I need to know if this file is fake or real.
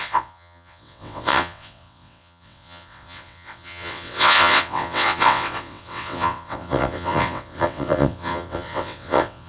fake